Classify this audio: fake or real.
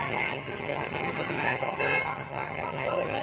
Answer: fake